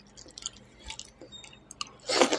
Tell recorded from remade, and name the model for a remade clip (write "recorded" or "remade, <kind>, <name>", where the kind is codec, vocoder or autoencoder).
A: recorded